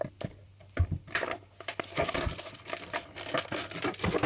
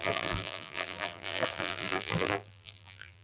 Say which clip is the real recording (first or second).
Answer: first